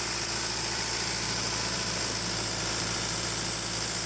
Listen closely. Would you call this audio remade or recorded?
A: remade